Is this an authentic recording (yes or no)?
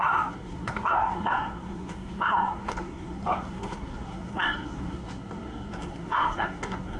no